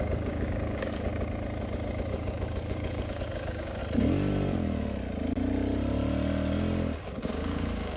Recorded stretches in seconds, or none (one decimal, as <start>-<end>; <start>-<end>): 1.1-2.1; 3.8-7.0